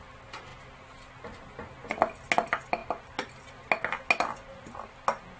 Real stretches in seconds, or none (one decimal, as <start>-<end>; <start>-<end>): 0.0-5.4